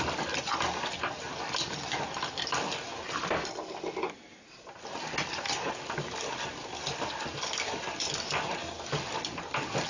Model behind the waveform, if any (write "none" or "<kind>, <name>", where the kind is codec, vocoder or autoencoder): none